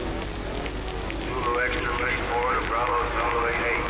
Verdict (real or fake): real